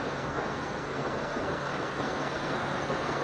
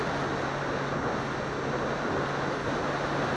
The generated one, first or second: first